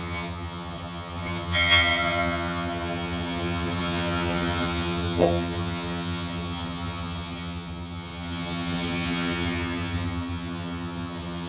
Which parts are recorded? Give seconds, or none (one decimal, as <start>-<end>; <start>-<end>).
none